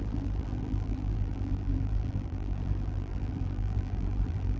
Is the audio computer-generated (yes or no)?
yes